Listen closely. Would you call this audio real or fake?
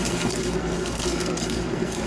fake